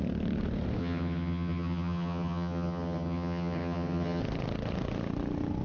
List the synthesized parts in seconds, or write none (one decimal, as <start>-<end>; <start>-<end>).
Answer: 0.8-4.2

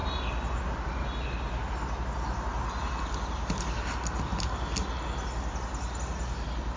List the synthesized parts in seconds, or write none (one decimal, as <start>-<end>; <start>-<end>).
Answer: none

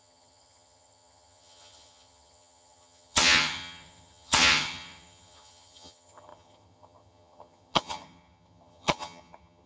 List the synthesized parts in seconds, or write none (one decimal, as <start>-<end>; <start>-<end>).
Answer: 0.0-9.7

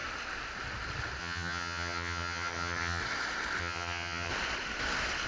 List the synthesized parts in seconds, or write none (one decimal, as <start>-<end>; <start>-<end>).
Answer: 1.2-3.0; 3.6-4.3

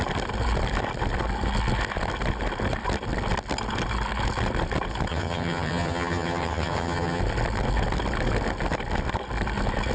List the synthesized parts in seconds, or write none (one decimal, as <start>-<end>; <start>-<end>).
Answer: 5.1-7.2

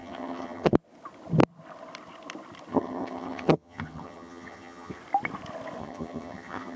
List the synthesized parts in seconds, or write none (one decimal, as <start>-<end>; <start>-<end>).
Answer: 0.0-0.7; 2.7-5.0; 5.8-6.8

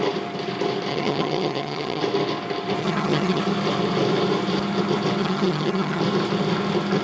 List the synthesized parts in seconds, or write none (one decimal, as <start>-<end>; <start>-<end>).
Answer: 0.9-2.0; 2.8-3.4; 5.2-6.0

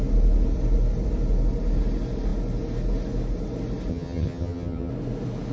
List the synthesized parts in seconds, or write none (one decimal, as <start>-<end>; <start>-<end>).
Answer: 3.9-4.9